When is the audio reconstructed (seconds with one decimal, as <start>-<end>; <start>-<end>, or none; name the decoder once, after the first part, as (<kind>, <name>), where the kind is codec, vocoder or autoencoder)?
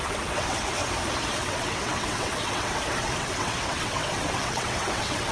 0.0-0.8 (vocoder, WaveNeXt); 1.3-5.3